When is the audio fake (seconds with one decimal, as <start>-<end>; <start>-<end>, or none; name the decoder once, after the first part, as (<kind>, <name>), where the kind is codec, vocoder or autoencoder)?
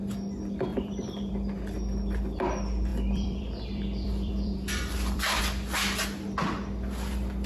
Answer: 0.7-1.3 (vocoder, BigVGAN v2); 2.9-5.4